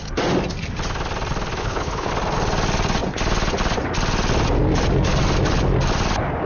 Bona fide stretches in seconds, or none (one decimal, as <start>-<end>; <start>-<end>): 0.0-1.6; 2.1-6.5